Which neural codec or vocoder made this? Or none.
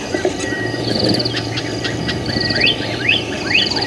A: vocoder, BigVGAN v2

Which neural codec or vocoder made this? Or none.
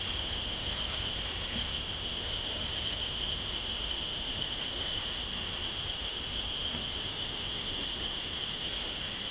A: autoencoder, DAC-VAE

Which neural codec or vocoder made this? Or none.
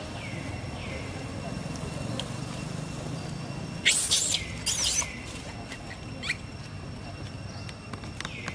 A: none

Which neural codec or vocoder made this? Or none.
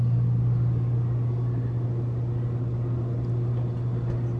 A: none